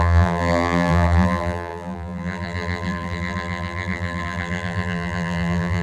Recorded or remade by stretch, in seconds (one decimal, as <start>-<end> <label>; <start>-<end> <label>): 0.0-5.8 remade

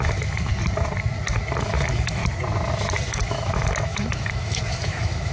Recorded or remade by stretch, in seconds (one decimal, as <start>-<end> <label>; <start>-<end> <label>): 0.0-0.5 remade; 0.5-1.6 recorded; 1.6-2.2 remade; 2.2-3.1 recorded; 3.1-5.3 remade

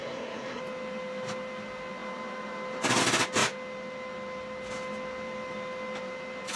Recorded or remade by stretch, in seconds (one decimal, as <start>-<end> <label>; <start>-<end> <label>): 0.0-0.6 remade; 0.6-6.6 recorded

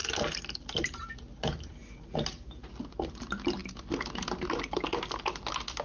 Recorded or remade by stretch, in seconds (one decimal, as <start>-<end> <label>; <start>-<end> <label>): 0.0-5.8 recorded

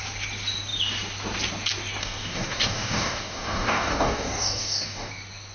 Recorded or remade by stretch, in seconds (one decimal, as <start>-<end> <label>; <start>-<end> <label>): 0.0-2.0 recorded; 2.0-5.1 remade; 5.1-5.5 recorded

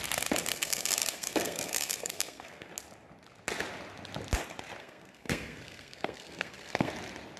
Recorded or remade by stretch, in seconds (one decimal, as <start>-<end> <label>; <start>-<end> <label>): 0.0-0.5 recorded; 0.5-2.7 remade; 2.7-4.8 recorded; 4.8-6.9 remade; 6.9-7.4 recorded

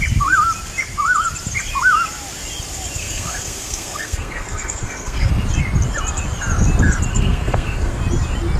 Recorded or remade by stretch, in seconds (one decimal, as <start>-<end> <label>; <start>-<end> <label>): 0.0-3.0 recorded; 3.0-5.3 remade; 5.3-7.1 recorded; 7.1-8.0 remade; 8.0-8.6 recorded

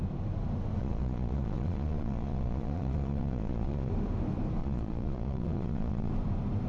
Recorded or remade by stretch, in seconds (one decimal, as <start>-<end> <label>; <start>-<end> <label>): 0.0-0.8 recorded; 0.8-3.9 remade; 3.9-4.6 recorded; 4.6-6.1 remade; 6.1-6.7 recorded